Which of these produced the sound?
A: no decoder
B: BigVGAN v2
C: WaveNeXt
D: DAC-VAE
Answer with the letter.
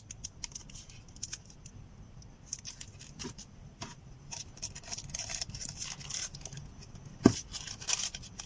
A